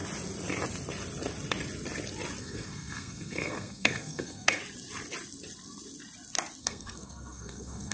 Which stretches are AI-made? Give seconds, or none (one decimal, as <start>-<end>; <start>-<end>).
2.4-4.6; 6.6-7.9